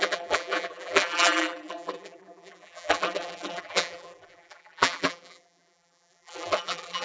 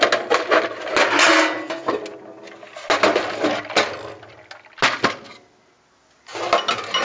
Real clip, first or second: second